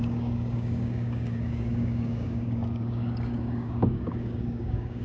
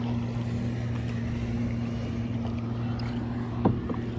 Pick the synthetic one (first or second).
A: first